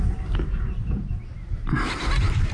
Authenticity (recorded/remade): recorded